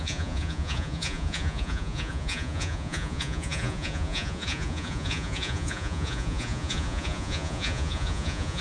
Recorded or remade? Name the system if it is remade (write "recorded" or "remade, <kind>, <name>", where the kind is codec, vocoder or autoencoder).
remade, vocoder, Vocos